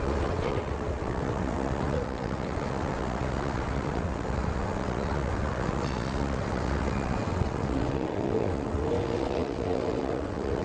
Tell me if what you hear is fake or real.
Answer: fake